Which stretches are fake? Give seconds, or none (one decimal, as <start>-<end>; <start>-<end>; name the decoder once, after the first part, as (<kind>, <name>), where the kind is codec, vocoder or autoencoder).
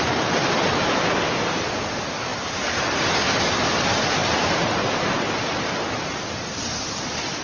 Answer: none